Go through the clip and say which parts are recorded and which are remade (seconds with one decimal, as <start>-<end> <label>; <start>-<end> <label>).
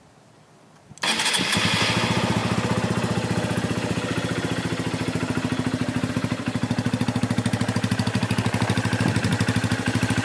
0.0-10.2 recorded